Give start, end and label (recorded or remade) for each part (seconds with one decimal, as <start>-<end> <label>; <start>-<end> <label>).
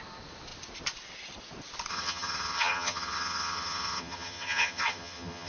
0.0-1.9 recorded; 1.9-5.5 remade